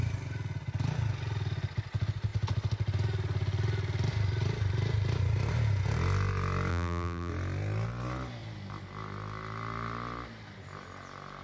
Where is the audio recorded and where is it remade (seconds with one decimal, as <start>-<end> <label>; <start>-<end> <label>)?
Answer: 0.0-6.7 recorded; 6.7-7.3 remade; 7.3-11.4 recorded